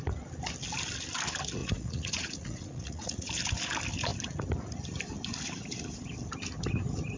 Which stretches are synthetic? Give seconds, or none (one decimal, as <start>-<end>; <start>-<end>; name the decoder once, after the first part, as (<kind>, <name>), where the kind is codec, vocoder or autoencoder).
1.6-3.3 (vocoder, Vocos)